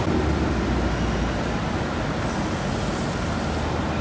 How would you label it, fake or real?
real